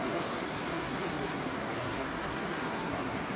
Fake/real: fake